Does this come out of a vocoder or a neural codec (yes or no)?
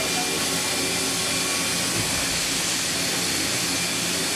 no